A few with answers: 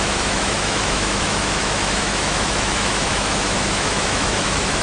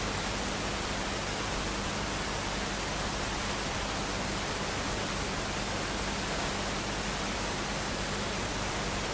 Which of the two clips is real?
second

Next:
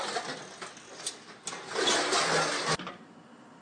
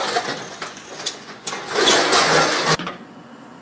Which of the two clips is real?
first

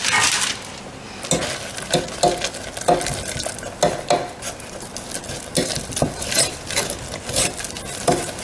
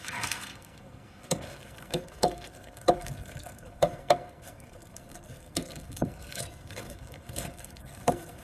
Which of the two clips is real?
first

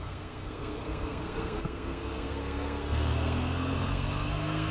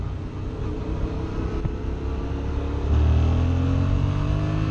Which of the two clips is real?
second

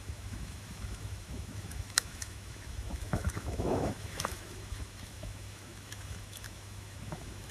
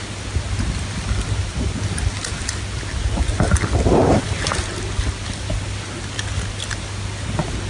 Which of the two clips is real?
second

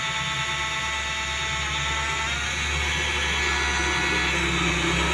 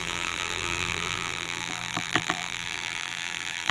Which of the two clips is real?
first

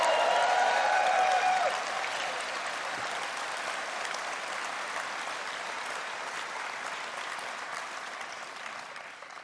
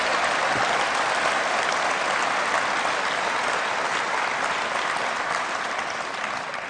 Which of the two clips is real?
second